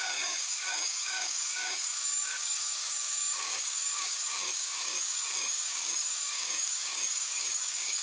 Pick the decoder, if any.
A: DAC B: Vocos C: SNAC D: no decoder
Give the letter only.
A